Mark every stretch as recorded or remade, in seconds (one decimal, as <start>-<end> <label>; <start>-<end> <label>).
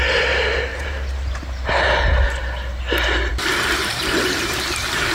0.0-0.7 recorded; 0.7-2.0 remade; 2.0-5.1 recorded